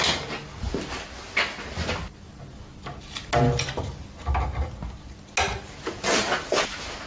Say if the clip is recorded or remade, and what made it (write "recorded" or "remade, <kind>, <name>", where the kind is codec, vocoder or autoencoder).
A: recorded